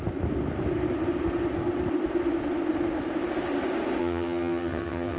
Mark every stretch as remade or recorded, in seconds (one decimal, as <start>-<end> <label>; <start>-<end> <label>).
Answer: 0.0-4.0 recorded; 4.0-5.2 remade